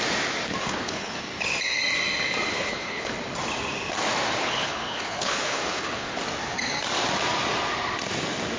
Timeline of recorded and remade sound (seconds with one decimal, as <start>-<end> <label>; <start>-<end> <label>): 0.0-0.6 recorded; 0.6-1.2 remade; 1.2-2.5 recorded; 2.5-3.1 remade; 3.1-4.4 recorded; 4.4-6.2 remade; 6.2-8.6 recorded